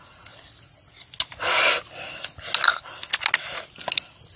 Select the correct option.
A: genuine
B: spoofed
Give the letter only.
A